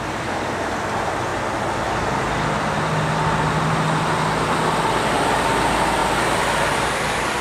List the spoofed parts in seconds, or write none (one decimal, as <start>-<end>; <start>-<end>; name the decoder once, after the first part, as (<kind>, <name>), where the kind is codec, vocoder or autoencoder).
0.0-1.3 (vocoder, BigVGAN v2); 5.1-7.4